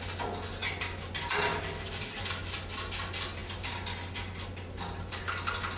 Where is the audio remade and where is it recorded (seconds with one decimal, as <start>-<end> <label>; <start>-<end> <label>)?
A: 0.0-5.8 recorded